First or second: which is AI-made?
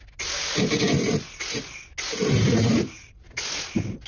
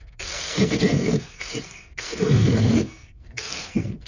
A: second